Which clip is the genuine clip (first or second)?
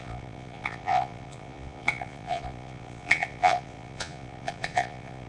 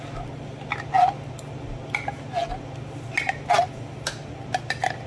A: second